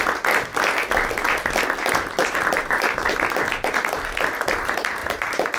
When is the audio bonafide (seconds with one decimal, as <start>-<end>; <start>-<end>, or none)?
0.0-2.2; 3.1-5.0

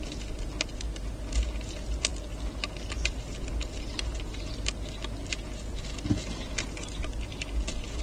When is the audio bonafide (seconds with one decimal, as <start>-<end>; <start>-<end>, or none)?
0.0-8.0

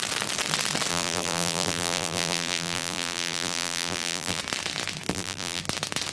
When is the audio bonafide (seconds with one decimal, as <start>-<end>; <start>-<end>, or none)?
0.0-0.9; 4.4-5.1; 5.6-6.1

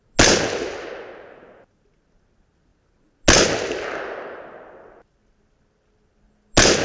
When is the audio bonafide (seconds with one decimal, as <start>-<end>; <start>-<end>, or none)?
0.0-6.8

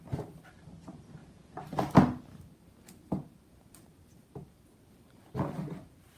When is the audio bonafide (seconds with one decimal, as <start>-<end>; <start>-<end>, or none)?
0.0-6.2

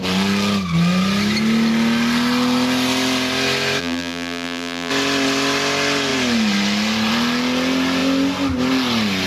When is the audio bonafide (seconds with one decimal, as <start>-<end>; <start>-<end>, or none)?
0.0-3.8; 4.9-9.3

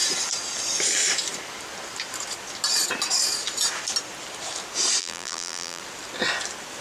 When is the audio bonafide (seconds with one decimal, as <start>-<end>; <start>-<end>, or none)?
0.0-5.0; 5.8-6.8